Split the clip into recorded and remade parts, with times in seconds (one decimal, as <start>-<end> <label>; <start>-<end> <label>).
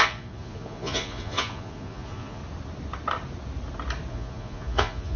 0.0-2.4 remade; 2.4-4.1 recorded; 4.1-5.2 remade